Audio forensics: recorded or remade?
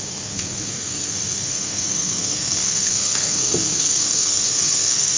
remade